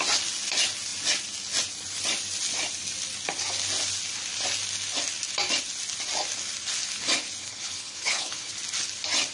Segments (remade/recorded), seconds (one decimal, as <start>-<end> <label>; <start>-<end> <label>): 0.0-7.4 recorded; 7.4-8.5 remade; 8.5-9.3 recorded